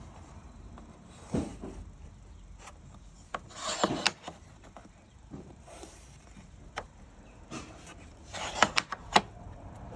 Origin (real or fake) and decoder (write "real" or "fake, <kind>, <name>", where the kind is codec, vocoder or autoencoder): fake, vocoder, BigVGAN v2